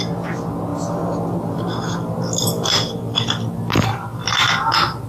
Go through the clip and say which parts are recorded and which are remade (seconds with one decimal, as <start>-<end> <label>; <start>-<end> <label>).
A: 0.0-5.1 recorded